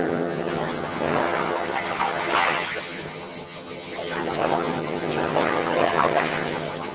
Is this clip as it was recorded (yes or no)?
no